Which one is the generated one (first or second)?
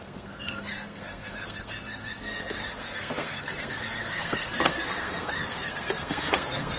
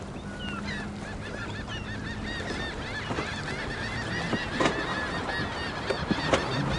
first